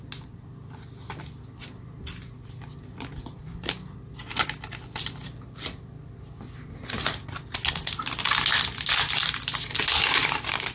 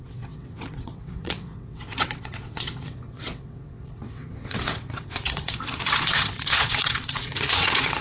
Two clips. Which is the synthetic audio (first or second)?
second